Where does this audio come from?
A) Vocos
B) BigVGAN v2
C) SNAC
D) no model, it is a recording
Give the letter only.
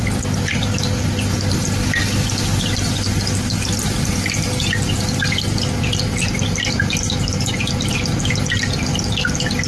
D